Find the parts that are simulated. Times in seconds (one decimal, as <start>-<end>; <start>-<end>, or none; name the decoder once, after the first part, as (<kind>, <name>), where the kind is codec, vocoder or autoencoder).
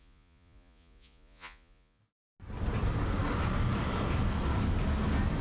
0.0-2.0 (vocoder, Vocos)